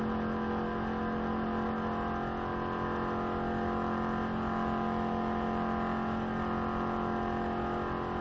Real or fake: real